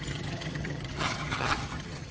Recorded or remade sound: remade